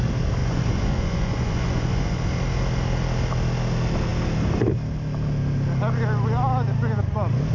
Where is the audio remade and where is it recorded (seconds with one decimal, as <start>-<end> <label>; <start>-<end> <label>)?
0.0-0.4 recorded; 0.4-2.2 remade; 2.2-7.5 recorded